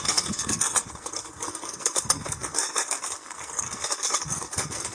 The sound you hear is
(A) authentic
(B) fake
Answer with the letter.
B